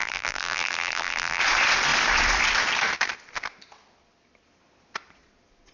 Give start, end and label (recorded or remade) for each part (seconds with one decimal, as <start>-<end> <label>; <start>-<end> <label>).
0.0-1.4 remade; 1.4-5.7 recorded